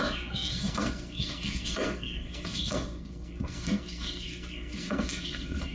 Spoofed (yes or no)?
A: yes